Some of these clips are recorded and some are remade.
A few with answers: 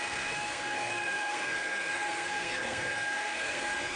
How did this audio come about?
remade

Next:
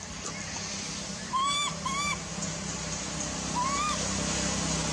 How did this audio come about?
recorded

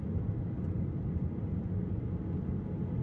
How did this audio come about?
recorded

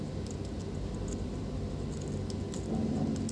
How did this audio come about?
recorded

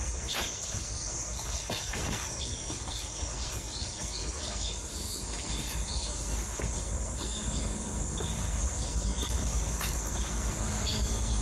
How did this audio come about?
remade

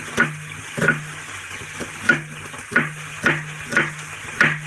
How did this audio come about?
recorded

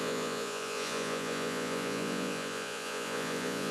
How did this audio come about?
remade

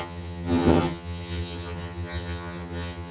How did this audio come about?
remade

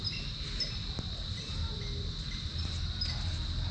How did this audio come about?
recorded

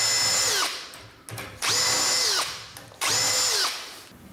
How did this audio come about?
recorded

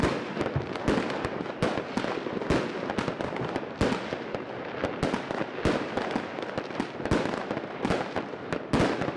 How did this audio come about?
recorded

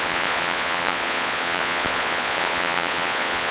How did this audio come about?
remade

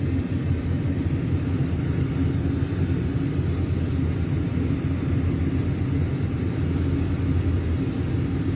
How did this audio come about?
recorded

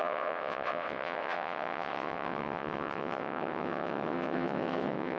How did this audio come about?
remade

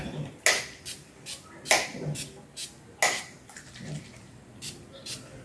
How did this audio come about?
recorded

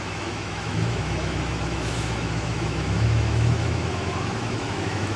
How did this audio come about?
remade